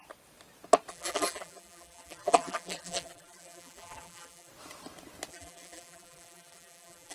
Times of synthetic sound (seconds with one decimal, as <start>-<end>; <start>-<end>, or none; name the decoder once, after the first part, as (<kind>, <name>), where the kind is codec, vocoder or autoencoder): 0.9-4.5 (vocoder, BigVGAN v2); 5.3-7.1